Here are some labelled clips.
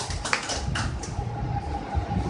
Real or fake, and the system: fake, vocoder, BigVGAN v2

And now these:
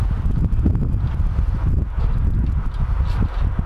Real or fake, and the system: real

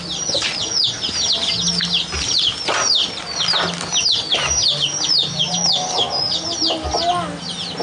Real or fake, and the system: real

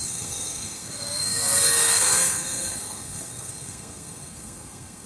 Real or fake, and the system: fake, codec, SNAC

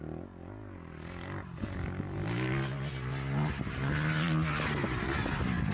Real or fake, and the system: real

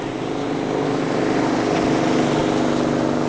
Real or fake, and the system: real